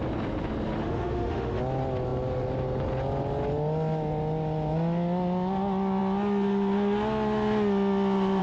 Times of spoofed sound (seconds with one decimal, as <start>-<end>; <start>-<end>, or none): 0.8-1.6